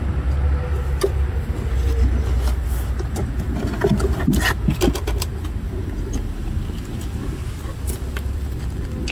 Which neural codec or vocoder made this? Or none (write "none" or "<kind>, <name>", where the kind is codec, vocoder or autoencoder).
none